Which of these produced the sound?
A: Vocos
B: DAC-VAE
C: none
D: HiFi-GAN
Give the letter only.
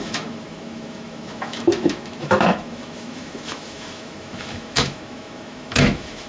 B